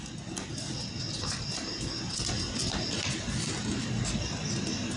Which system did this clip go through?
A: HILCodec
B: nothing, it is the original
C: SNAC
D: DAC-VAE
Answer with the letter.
B